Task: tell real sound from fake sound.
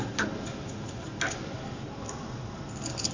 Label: real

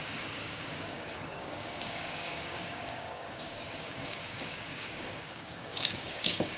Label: fake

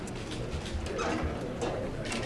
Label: real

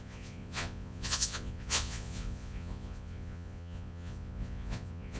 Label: fake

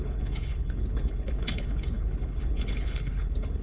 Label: fake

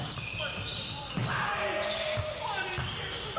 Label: real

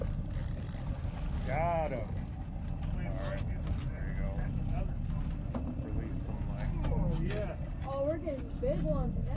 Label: real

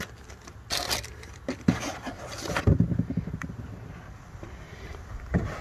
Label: real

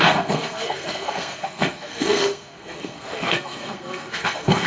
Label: fake